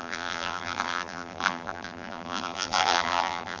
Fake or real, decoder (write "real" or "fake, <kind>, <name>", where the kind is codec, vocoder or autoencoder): fake, vocoder, BigVGAN v2